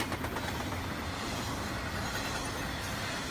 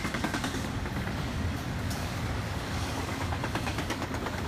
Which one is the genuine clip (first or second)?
first